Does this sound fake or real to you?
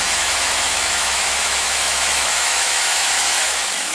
fake